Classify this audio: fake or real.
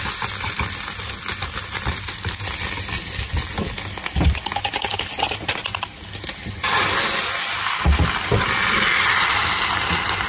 real